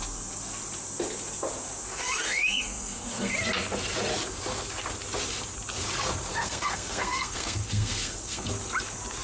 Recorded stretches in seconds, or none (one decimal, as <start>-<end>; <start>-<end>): 0.0-1.9; 3.3-6.3; 8.5-9.2